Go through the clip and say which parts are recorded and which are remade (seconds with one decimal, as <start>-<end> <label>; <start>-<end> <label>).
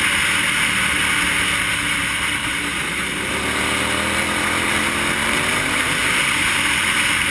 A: 0.0-2.4 recorded; 2.4-3.3 remade; 3.3-5.2 recorded; 5.2-5.9 remade; 5.9-7.3 recorded